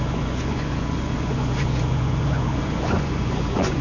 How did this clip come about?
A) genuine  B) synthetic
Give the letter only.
B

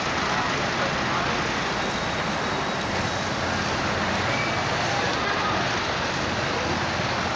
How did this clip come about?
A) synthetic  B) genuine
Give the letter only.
B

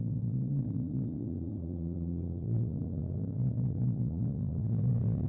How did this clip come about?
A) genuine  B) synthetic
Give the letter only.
B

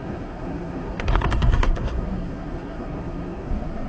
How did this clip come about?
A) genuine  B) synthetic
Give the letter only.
B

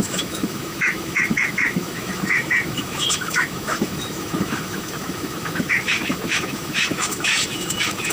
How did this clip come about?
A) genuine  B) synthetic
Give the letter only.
B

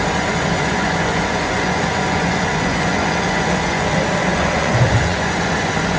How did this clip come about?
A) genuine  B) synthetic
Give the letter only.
B